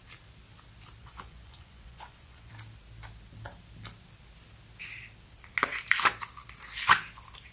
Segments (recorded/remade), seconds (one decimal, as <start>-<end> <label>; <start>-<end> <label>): 0.0-1.0 recorded; 1.0-2.5 remade; 2.5-7.5 recorded